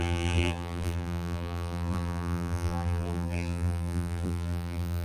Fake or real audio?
fake